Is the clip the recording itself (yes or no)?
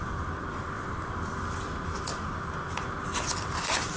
yes